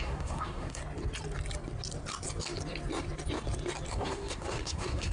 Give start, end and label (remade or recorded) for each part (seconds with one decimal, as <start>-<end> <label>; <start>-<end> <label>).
0.0-0.8 remade; 0.8-3.9 recorded; 3.9-5.1 remade